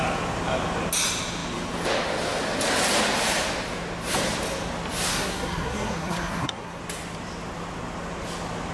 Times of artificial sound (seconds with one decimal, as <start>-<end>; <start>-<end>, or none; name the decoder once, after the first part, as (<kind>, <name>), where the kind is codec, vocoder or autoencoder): 5.1-6.8 (codec, SNAC)